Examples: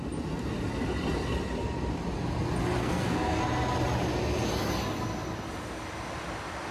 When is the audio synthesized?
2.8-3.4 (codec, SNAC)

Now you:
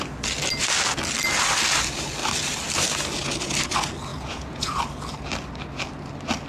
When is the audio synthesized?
4.1-4.8 (vocoder, Vocos)

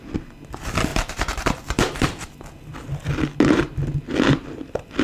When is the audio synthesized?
0.9-2.2 (vocoder, BigVGAN v2)